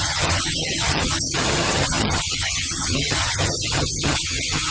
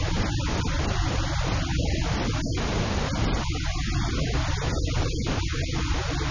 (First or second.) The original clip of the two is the second